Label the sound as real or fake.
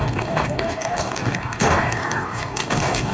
fake